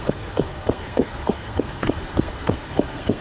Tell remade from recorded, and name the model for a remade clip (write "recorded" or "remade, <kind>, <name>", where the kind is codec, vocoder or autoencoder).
remade, codec, SNAC